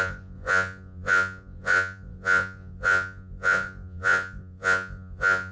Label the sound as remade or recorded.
remade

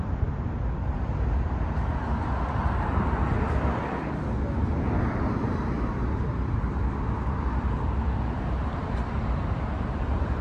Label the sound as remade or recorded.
recorded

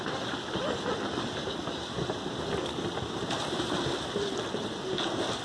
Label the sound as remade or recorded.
recorded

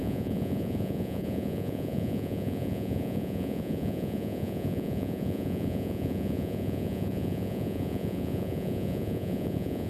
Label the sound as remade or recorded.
remade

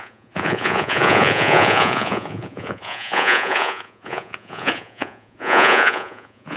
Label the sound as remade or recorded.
remade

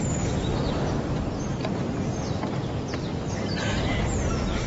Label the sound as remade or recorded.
recorded